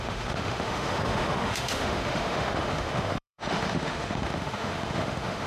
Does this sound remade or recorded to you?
remade